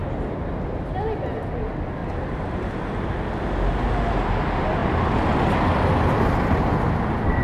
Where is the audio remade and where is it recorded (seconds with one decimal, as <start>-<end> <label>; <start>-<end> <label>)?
0.0-2.0 recorded; 2.0-2.7 remade; 2.7-7.4 recorded